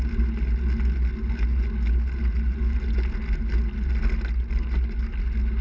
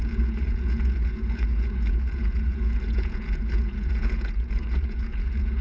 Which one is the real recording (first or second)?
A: first